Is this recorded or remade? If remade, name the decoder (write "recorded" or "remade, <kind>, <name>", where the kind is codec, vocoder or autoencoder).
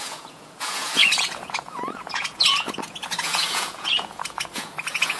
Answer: remade, vocoder, Vocos